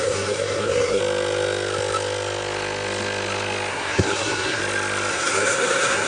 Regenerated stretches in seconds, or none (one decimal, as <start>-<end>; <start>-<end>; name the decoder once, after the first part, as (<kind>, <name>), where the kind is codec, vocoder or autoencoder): 0.0-1.0 (codec, SNAC); 3.7-4.6; 5.1-6.1